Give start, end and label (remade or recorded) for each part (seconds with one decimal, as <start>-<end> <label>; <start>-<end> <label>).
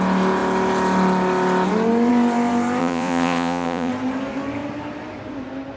0.0-2.8 recorded; 2.8-3.9 remade; 3.9-5.8 recorded